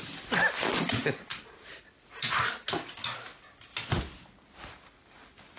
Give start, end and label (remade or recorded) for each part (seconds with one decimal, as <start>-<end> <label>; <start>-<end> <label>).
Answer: 0.0-1.3 recorded; 1.3-2.5 remade; 2.5-5.6 recorded